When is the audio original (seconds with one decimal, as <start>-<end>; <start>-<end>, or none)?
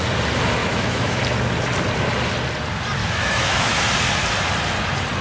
0.0-0.6; 1.2-3.0; 3.8-5.2